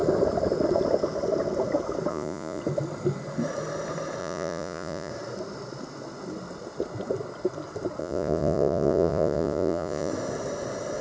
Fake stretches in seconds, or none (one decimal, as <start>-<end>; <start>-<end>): 2.1-2.6; 4.2-5.1; 8.0-10.1